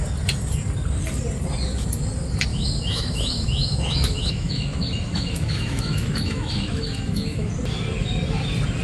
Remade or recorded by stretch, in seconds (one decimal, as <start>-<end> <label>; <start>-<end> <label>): 0.0-2.5 recorded; 2.5-7.5 remade; 7.5-8.8 recorded